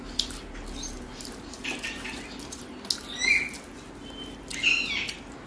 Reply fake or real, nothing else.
real